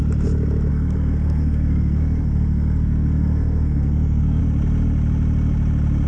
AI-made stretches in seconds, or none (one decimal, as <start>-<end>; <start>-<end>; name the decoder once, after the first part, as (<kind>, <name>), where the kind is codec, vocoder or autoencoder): 0.7-4.4 (codec, SNAC)